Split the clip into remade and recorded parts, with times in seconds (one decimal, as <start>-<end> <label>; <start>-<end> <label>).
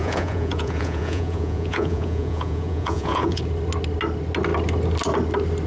0.0-3.4 remade; 3.4-5.7 recorded